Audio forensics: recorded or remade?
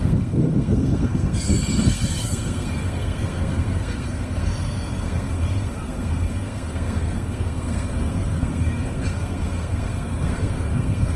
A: remade